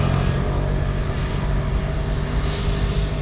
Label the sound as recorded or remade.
recorded